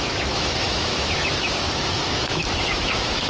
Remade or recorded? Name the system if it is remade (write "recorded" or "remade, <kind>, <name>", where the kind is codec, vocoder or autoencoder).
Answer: remade, autoencoder, DAC-VAE